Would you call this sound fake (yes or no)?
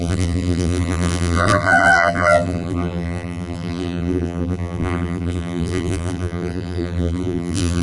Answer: yes